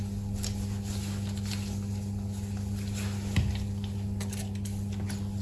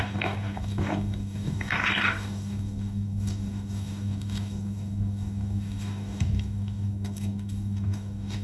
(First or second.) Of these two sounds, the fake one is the second